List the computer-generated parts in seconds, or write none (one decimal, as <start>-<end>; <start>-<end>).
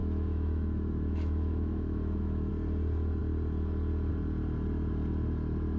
0.0-2.5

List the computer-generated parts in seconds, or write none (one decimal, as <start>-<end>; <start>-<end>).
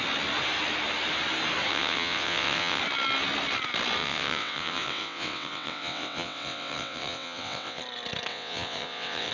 1.7-2.8; 4.0-7.8; 8.3-9.3